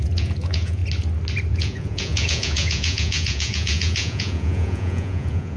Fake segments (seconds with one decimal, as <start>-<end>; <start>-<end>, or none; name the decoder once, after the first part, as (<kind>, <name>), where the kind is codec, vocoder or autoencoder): 0.0-0.8 (vocoder, Vocos); 1.5-5.6